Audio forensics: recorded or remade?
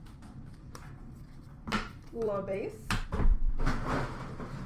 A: remade